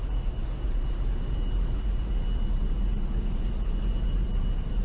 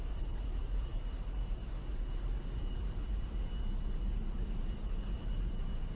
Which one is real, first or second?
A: first